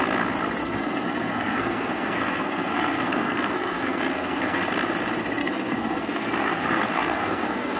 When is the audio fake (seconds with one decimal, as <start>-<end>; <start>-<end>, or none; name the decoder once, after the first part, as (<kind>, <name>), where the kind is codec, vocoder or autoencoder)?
0.6-4.7 (codec, SNAC); 5.4-7.8